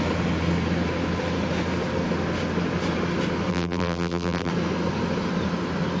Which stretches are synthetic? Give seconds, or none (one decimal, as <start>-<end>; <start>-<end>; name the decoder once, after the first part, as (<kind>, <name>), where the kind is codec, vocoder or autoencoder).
3.5-4.5 (vocoder, BigVGAN v2)